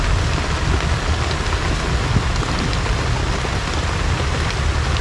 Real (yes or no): yes